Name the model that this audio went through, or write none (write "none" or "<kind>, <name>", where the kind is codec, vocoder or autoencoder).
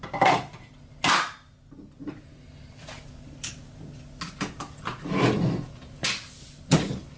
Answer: none